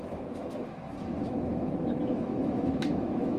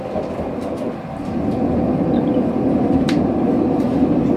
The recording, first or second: second